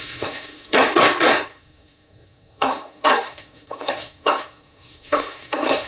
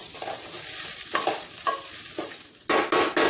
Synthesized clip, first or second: first